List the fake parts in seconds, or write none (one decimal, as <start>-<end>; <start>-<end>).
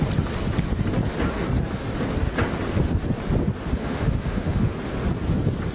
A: 3.8-4.7